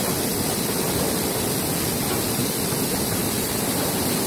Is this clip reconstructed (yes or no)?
no